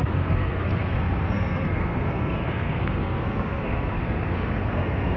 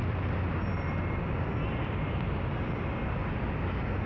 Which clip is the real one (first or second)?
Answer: second